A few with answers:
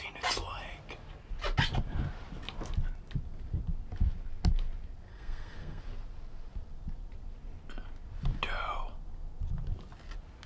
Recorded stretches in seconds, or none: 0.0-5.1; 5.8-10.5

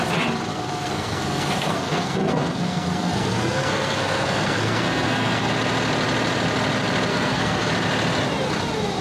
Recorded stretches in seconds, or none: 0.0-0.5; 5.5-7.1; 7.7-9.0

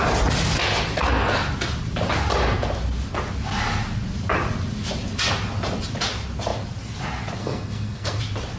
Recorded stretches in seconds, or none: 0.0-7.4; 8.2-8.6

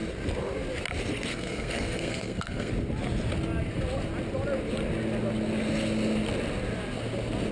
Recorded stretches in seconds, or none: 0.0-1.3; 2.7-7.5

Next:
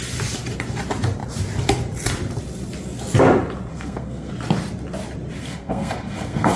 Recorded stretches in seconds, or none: 0.0-3.7; 4.3-5.4

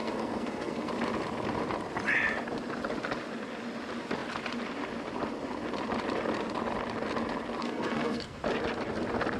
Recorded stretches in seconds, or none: 0.9-7.6; 8.4-9.4

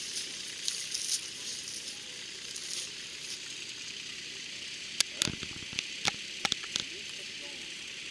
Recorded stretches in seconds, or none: 0.0-8.1

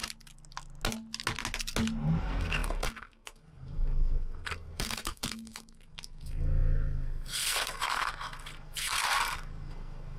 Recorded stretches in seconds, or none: 0.0-2.2